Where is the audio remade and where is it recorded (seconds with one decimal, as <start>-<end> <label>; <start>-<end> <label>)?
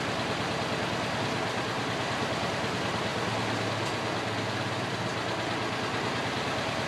0.0-6.9 recorded